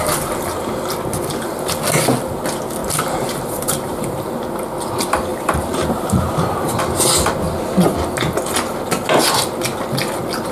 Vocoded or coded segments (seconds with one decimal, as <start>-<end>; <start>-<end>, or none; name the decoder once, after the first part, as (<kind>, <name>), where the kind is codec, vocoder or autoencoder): 2.8-4.3 (vocoder, BigVGAN v2); 5.3-6.8